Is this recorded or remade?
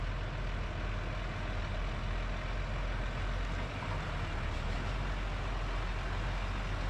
recorded